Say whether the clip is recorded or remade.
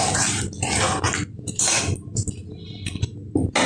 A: recorded